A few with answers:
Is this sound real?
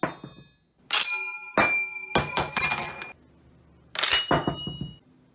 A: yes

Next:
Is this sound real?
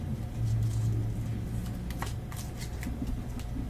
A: yes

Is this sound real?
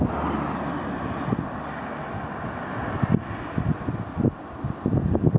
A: yes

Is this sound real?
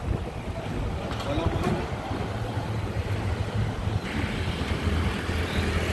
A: yes